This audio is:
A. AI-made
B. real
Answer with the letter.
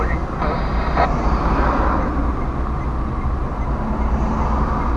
B